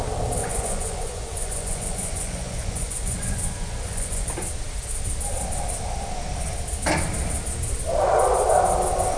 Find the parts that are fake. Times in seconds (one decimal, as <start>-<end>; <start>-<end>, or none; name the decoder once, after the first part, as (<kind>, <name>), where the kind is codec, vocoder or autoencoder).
0.4-4.3 (vocoder, Vocos)